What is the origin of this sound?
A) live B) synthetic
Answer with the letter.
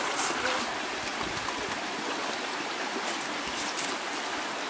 A